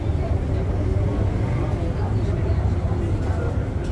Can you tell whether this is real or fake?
real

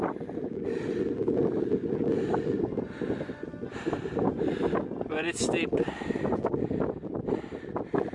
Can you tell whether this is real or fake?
real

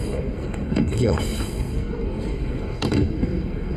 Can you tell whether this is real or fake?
fake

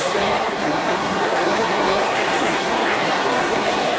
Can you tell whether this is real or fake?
fake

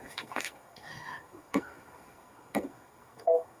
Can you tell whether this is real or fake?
fake